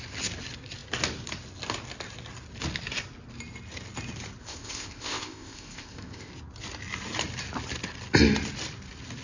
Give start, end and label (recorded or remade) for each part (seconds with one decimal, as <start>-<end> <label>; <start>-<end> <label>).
0.0-4.4 recorded; 4.4-6.3 remade; 6.3-9.2 recorded